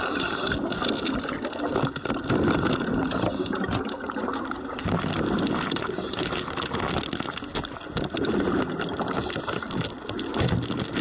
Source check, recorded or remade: recorded